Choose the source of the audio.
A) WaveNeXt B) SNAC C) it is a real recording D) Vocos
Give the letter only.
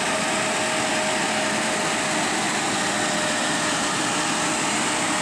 C